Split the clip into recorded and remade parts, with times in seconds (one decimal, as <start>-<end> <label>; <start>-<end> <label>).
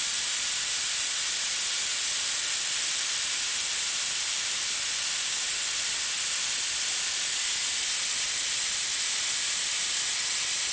0.0-10.7 recorded